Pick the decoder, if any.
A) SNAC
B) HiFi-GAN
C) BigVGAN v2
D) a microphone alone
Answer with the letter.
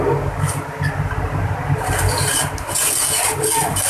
D